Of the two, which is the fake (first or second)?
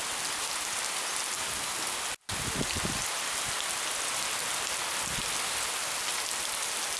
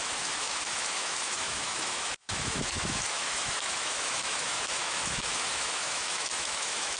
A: second